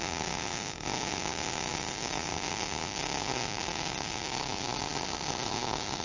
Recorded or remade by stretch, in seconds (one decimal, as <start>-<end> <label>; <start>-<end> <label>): 0.0-4.9 remade; 4.9-5.5 recorded; 5.5-6.0 remade

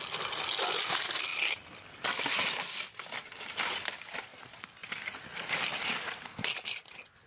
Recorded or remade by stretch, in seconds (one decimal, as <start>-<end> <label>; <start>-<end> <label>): 0.0-7.3 recorded

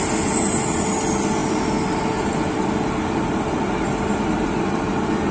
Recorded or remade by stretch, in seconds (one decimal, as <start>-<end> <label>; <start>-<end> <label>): 0.0-5.3 recorded

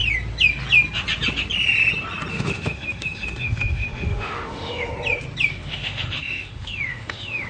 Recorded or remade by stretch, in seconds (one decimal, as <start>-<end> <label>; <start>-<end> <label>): 0.0-2.3 recorded; 2.3-4.9 remade; 4.9-5.5 recorded; 5.5-7.5 remade

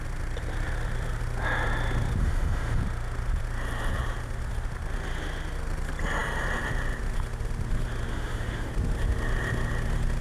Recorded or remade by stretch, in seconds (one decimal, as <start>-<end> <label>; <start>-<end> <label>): 0.0-2.2 recorded; 2.2-2.8 remade; 2.8-8.1 recorded; 8.1-8.7 remade; 8.7-10.2 recorded

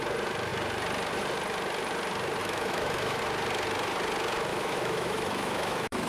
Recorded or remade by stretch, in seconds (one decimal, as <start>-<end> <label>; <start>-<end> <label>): 0.0-2.4 recorded; 2.4-3.2 remade; 3.2-4.5 recorded; 4.5-6.1 remade